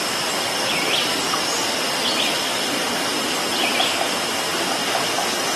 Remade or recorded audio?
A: recorded